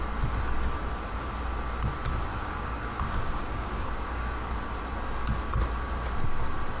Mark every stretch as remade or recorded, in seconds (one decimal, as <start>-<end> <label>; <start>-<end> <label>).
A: 0.0-2.3 recorded; 2.3-4.5 remade; 4.5-6.8 recorded